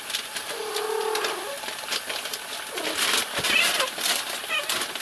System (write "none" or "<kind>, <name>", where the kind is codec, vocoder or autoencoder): none